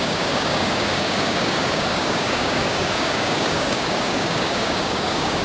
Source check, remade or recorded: remade